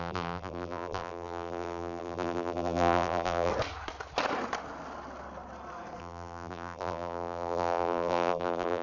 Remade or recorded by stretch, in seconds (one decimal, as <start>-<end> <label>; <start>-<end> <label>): 0.0-3.5 remade; 3.5-6.0 recorded; 6.0-8.8 remade